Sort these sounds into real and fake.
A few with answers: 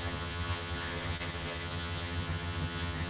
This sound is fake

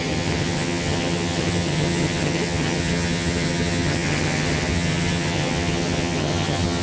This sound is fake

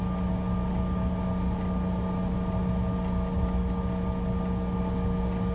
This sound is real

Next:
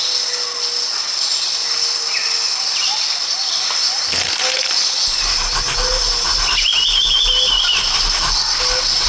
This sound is real